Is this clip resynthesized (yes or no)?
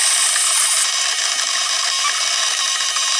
no